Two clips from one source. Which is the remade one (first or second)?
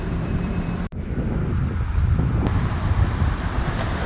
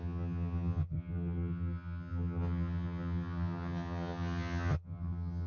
second